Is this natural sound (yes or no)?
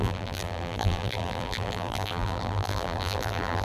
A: no